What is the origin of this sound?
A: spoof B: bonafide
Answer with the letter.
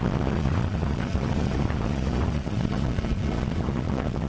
A